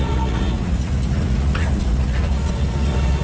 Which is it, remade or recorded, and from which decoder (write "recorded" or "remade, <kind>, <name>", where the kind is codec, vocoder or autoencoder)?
remade, vocoder, Vocos